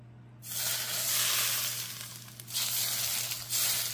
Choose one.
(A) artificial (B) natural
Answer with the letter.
B